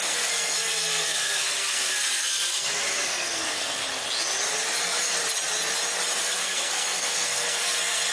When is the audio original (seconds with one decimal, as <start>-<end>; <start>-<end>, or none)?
3.8-4.8; 5.2-6.2

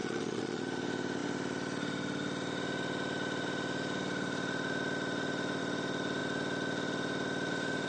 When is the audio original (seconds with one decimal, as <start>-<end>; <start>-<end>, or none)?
0.6-7.9

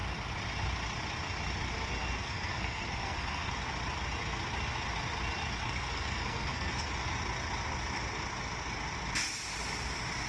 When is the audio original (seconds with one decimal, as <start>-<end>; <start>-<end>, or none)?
0.0-2.2; 3.5-5.6; 6.7-10.3

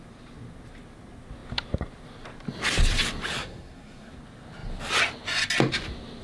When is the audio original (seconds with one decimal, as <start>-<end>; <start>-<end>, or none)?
0.0-3.4; 4.1-6.2

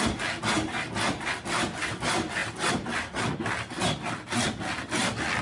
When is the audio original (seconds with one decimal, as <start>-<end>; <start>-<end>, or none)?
0.0-5.4